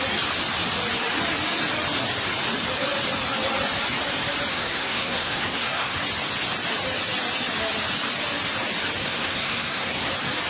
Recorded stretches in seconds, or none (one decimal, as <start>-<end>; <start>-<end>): 0.0-4.5; 5.9-9.0; 10.1-10.5